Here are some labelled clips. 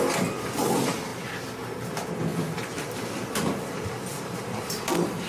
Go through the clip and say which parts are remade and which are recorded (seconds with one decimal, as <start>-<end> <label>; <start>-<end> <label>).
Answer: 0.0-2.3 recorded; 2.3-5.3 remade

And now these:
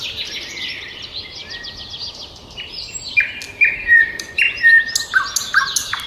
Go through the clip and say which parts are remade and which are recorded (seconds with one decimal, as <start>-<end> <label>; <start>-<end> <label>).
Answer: 0.0-6.1 recorded

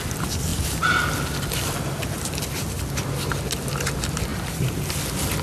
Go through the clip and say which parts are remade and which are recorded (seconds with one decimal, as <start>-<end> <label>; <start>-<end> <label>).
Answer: 0.0-5.4 recorded

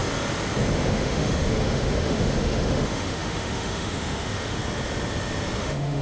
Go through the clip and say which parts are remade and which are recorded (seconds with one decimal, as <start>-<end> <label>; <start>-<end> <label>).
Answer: 0.0-0.7 recorded; 0.7-4.6 remade; 4.6-5.6 recorded; 5.6-6.0 remade

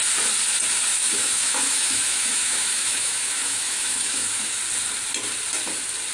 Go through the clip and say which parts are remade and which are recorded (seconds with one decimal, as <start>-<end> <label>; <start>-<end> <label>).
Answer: 0.0-0.9 recorded; 0.9-4.6 remade; 4.6-6.1 recorded